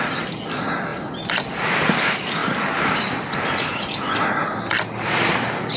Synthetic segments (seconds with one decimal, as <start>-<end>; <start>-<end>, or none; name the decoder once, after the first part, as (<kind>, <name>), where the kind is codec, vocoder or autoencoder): none